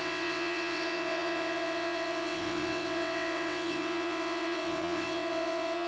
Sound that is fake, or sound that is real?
fake